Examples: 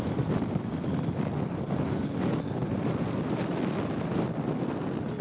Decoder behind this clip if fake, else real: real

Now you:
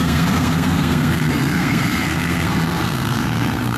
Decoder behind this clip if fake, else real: fake, codec, SNAC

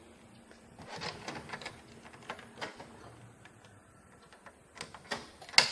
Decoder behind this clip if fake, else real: real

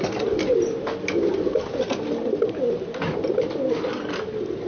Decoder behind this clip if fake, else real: real